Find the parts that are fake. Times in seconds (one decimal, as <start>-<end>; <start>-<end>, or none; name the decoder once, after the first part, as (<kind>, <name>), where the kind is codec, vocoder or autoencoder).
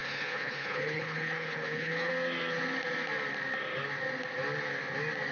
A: 0.0-2.1 (codec, HILCodec)